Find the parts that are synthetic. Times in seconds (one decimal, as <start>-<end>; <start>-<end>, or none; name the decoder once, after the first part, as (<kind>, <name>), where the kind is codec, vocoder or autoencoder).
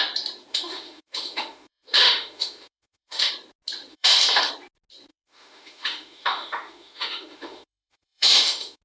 0.5-3.3 (autoencoder, DAC-VAE); 3.9-4.5; 5.1-8.8